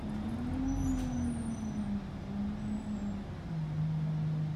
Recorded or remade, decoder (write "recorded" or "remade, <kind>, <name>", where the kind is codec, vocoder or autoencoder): recorded